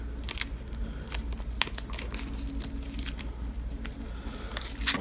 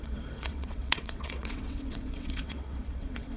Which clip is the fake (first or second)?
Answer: second